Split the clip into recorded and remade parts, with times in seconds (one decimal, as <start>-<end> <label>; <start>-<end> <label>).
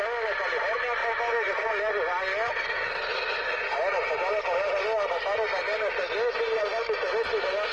0.0-1.0 recorded; 1.0-1.7 remade; 1.7-7.7 recorded